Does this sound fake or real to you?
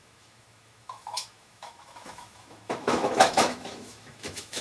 fake